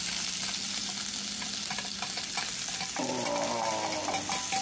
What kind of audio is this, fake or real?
real